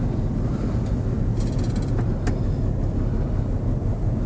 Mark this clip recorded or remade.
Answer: recorded